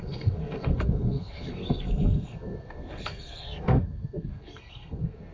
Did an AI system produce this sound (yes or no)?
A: yes